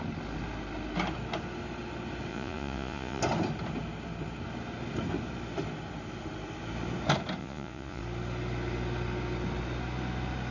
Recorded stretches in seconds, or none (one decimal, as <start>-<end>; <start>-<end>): 0.0-2.3; 3.2-7.4; 8.0-10.5